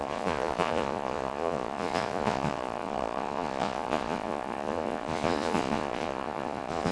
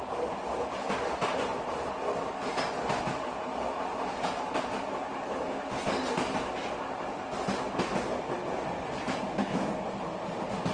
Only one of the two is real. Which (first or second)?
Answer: second